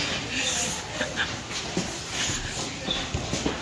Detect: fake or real real